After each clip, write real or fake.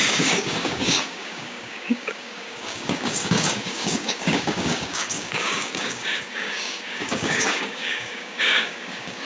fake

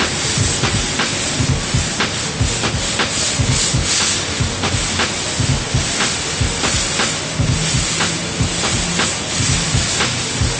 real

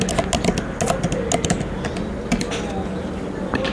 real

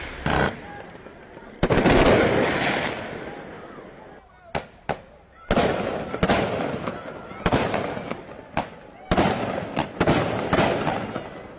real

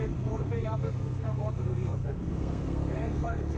fake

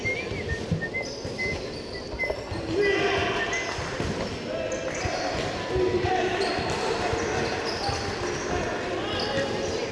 real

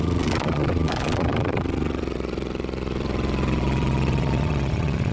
fake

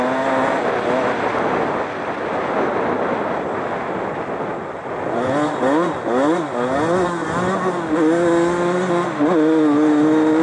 real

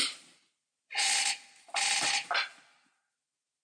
real